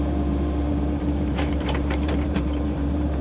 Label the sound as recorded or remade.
remade